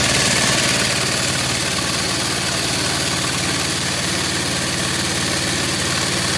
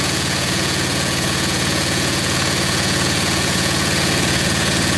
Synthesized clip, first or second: second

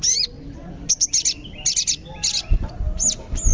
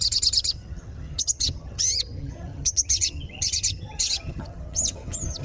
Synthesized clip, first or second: second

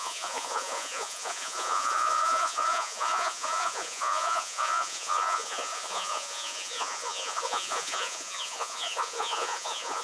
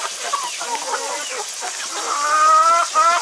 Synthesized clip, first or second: first